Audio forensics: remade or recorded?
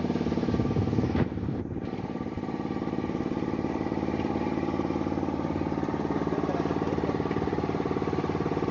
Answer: recorded